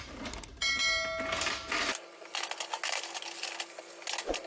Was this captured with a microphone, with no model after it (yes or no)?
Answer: yes